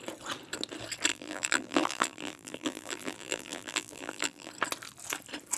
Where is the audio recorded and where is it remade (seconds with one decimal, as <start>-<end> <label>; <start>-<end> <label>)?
0.0-1.1 recorded; 1.1-4.5 remade; 4.5-5.6 recorded